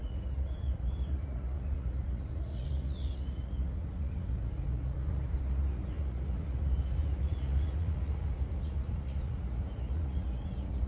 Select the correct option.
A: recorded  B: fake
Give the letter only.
B